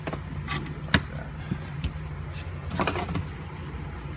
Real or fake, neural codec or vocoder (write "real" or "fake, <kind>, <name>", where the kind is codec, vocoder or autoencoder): real